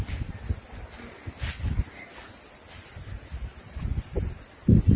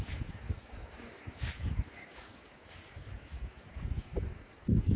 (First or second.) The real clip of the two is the first